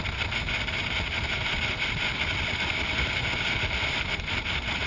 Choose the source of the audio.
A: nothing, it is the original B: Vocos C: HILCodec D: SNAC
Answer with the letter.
A